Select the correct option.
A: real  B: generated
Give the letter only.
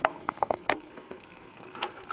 B